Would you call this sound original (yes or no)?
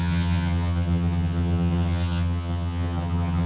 no